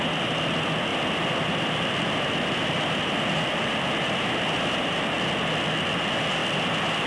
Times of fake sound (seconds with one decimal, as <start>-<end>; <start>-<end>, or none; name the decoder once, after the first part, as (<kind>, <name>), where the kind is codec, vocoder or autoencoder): 0.9-5.2 (vocoder, BigVGAN v2)